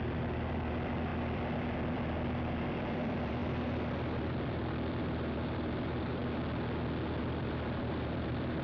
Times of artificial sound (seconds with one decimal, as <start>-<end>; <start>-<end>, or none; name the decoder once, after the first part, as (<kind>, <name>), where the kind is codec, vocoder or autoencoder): 0.0-3.4 (vocoder, BigVGAN v2); 4.2-6.2; 7.2-8.6